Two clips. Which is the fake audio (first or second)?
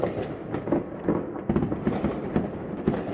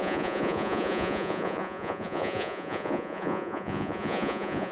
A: second